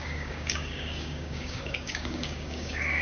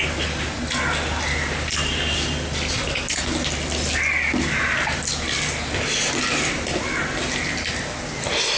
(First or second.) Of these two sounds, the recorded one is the second